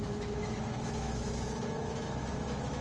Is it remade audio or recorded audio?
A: remade